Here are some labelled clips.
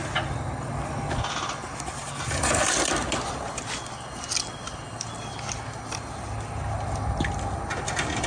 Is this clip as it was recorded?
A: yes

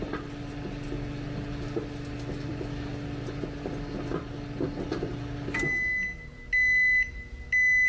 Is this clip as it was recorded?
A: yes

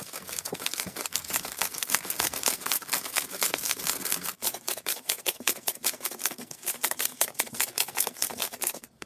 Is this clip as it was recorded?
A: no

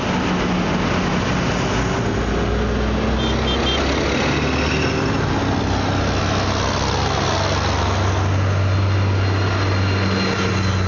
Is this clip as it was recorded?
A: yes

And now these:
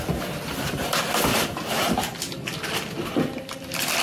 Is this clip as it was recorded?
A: yes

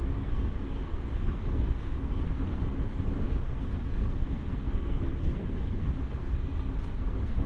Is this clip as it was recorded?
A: no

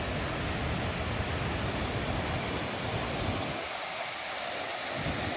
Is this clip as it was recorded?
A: yes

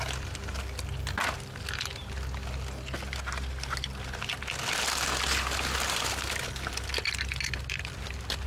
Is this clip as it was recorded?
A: yes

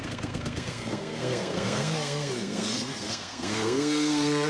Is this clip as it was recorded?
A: no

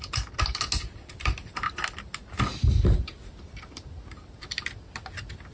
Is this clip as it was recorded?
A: yes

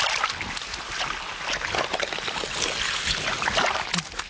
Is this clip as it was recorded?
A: yes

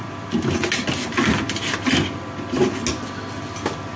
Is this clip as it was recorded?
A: yes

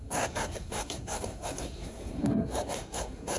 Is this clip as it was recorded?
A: no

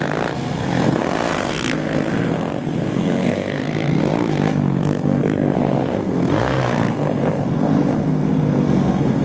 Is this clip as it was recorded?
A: no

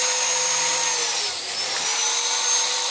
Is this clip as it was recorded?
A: yes